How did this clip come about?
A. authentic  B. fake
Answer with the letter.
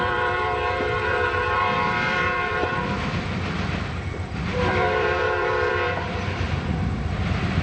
B